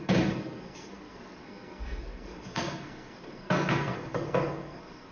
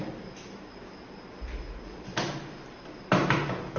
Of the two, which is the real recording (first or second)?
second